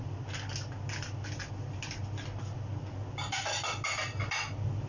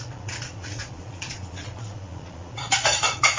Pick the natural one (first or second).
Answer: first